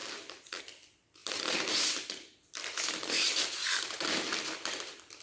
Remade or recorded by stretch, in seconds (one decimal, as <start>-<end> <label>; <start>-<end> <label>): 0.0-5.2 recorded